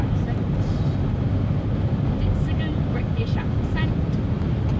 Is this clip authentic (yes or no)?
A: yes